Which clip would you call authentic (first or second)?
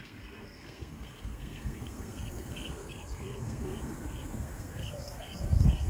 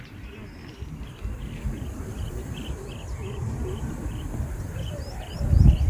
second